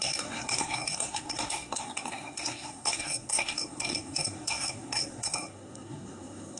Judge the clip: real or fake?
fake